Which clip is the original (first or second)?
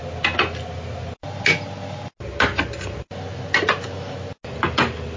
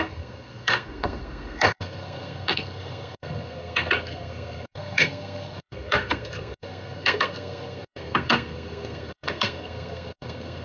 first